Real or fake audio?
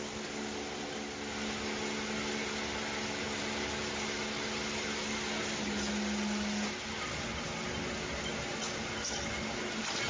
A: real